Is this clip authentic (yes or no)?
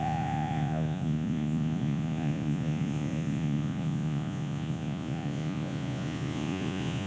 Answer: no